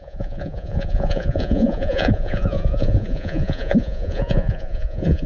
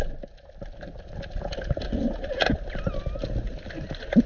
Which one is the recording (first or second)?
second